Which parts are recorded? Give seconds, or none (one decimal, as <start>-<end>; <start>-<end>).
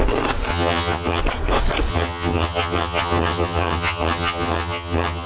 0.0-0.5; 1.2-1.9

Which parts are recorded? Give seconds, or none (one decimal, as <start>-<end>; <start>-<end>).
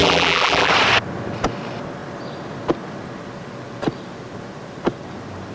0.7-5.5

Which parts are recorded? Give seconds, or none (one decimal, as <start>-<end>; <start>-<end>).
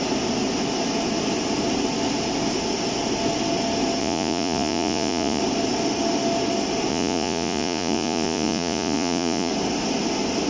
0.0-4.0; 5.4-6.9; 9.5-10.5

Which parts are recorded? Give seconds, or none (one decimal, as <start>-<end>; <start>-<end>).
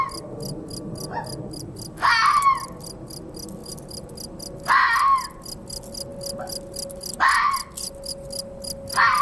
0.0-9.2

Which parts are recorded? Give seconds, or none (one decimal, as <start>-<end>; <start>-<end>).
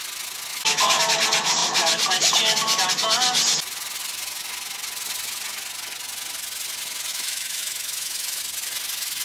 0.0-0.5; 1.0-7.1; 8.4-9.2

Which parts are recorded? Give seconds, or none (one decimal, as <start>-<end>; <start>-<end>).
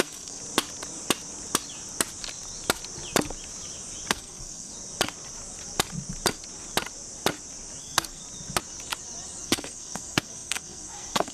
0.4-4.1; 4.7-7.8; 8.2-9.4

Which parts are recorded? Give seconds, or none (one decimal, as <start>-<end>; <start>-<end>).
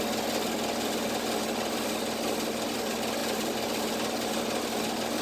0.0-5.2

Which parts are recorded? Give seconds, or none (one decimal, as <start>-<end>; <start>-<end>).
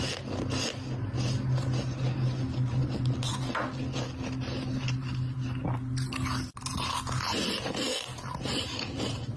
0.0-9.4